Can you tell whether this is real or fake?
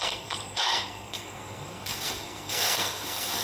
fake